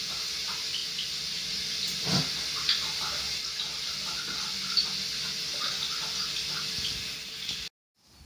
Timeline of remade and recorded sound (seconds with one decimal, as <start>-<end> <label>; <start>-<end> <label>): 0.0-8.3 recorded